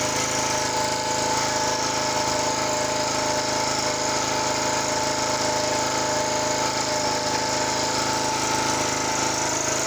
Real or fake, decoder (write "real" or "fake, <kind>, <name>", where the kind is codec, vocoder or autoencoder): real